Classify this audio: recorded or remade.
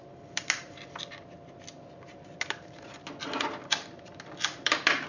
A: remade